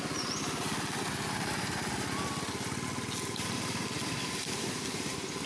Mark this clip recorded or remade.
recorded